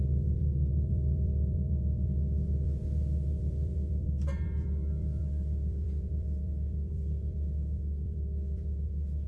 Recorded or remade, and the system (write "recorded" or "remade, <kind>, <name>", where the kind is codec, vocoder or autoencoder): remade, vocoder, BigVGAN v2